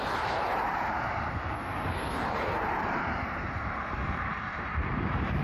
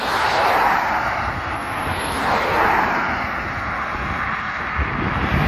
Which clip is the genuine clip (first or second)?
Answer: second